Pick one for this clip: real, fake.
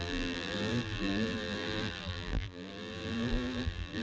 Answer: fake